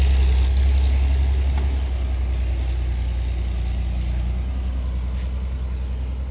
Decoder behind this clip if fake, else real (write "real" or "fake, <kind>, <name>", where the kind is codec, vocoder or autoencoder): real